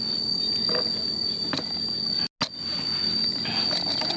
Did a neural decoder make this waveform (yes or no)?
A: no